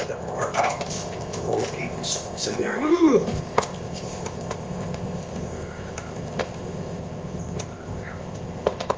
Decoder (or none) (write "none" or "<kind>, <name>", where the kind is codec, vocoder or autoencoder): codec, ZipCodec